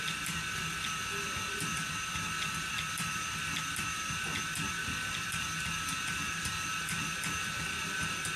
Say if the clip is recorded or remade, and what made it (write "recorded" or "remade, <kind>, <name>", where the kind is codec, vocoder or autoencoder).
recorded